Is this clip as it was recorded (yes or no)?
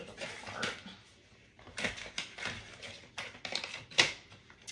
yes